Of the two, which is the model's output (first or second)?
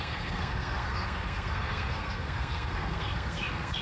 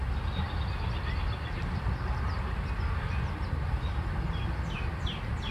first